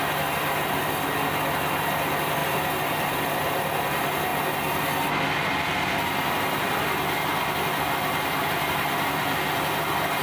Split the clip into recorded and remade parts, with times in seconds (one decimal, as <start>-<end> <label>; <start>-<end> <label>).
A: 0.0-10.2 recorded